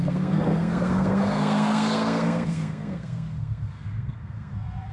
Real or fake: fake